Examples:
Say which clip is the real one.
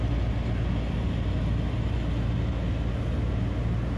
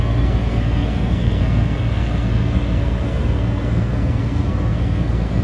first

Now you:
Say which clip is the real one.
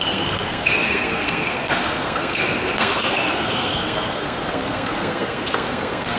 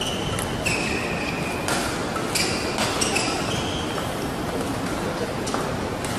second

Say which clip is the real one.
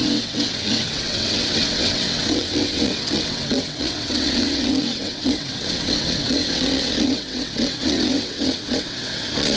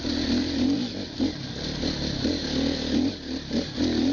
second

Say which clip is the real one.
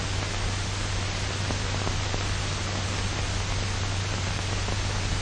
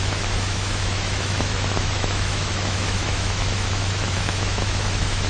first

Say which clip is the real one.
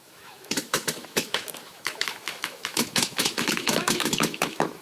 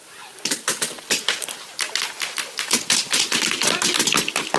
second